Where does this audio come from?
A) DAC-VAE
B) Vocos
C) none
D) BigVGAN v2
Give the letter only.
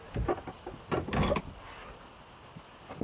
C